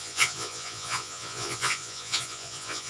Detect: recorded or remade remade